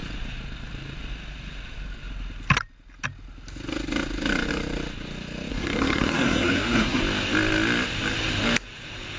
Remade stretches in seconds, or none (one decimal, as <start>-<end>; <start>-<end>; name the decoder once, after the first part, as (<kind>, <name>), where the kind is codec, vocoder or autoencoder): 5.5-7.0 (codec, SNAC)